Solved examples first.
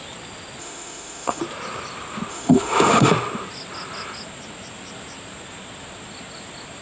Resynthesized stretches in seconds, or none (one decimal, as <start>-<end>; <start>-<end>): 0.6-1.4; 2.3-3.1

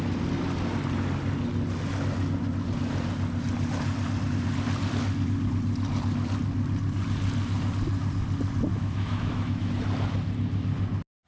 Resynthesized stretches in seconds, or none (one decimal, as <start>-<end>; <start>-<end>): 8.7-9.7

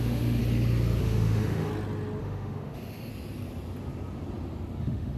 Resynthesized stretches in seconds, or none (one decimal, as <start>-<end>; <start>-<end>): 0.0-0.4; 1.0-1.7; 2.2-3.1; 4.8-5.2